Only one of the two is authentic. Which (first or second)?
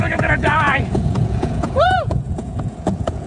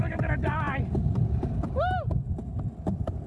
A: second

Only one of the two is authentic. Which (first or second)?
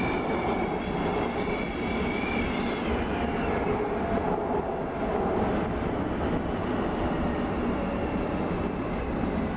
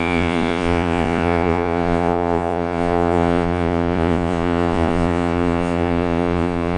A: first